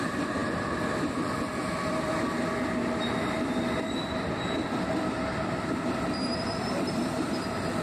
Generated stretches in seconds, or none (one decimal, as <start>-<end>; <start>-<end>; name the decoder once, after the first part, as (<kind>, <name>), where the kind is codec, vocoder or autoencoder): 0.0-1.5 (vocoder, BigVGAN v2); 6.2-7.8